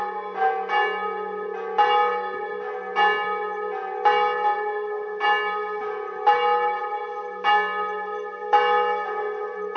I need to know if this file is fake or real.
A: real